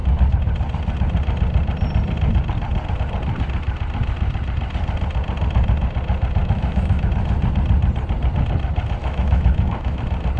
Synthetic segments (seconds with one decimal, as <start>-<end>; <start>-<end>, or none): 6.4-7.1; 9.0-10.0